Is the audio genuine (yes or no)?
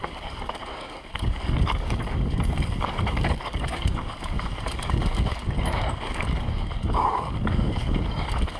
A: no